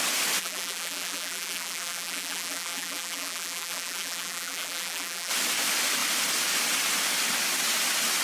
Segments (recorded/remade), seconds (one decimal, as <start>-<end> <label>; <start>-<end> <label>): 0.0-0.4 recorded; 0.4-5.3 remade; 5.3-8.2 recorded